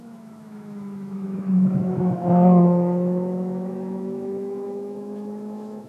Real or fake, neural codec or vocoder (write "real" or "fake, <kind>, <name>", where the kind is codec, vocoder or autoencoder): fake, autoencoder, DAC-VAE